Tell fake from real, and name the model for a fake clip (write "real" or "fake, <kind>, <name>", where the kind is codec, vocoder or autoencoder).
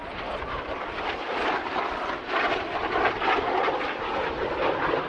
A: fake, vocoder, BigVGAN v2